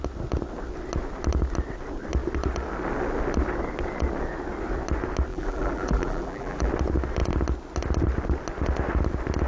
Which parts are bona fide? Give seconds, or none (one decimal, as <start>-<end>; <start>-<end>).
0.0-5.3; 6.7-9.5